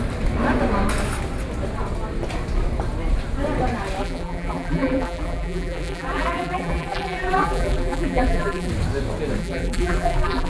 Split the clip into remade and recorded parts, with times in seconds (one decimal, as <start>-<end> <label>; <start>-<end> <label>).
0.0-4.0 recorded; 4.0-8.7 remade; 8.7-9.4 recorded; 9.4-10.5 remade